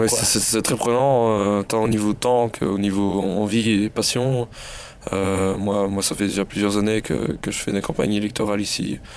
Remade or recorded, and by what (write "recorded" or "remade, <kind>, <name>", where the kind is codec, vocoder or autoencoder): remade, vocoder, Vocos